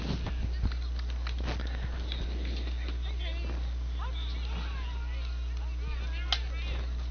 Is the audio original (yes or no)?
yes